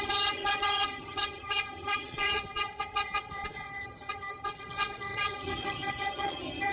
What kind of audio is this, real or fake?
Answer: fake